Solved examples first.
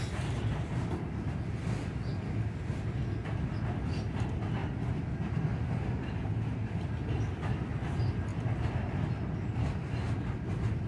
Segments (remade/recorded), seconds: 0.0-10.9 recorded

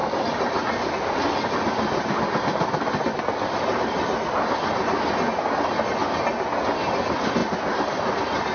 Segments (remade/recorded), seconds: 0.0-8.5 recorded

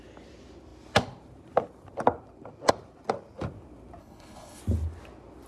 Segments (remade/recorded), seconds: 0.0-4.0 recorded; 4.0-4.6 remade; 4.6-5.5 recorded

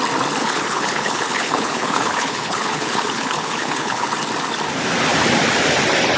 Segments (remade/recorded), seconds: 0.0-0.4 recorded; 0.4-4.1 remade; 4.1-6.2 recorded

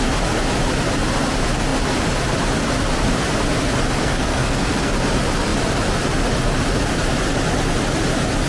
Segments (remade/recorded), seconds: 0.0-4.0 recorded; 4.0-4.9 remade; 4.9-8.5 recorded

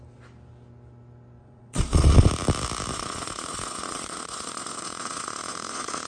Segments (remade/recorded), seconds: 0.0-1.4 recorded; 1.4-2.3 remade; 2.3-2.9 recorded; 2.9-6.1 remade